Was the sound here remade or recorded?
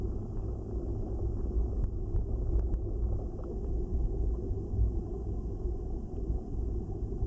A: recorded